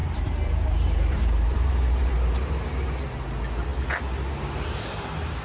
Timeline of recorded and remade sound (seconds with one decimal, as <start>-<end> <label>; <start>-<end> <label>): 0.0-2.9 remade; 2.9-5.4 recorded